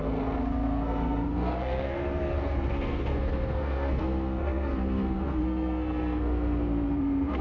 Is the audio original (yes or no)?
no